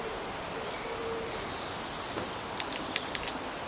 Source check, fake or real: real